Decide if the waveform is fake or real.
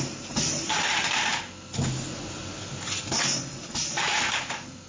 real